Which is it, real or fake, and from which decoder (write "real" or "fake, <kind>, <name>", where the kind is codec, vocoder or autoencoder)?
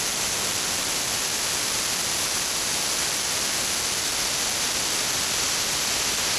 real